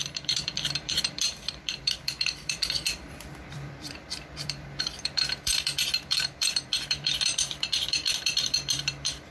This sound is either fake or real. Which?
fake